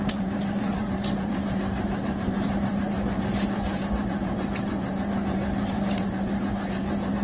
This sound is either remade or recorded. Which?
remade